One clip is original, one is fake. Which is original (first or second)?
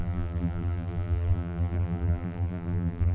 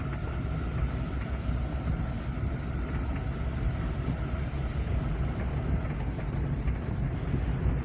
second